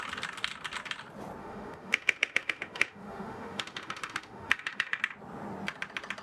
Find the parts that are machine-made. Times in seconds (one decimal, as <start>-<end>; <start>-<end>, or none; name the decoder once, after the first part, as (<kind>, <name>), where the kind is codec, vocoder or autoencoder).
1.4-5.0 (autoencoder, DAC-VAE)